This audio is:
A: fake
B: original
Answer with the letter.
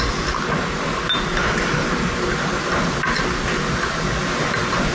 B